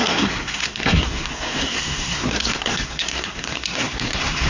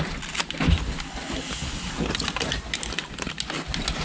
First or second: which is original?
second